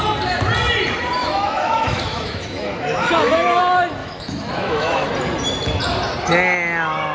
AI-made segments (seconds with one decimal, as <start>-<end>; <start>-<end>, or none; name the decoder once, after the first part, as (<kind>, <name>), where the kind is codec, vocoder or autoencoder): 1.2-3.6 (autoencoder, DAC-VAE); 4.0-5.1